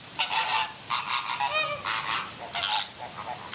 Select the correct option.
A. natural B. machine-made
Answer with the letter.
A